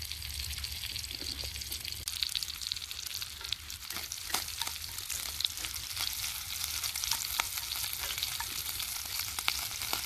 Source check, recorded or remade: recorded